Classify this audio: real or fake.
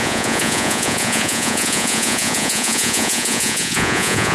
fake